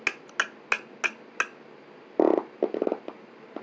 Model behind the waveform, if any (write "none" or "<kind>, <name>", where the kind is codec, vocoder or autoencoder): none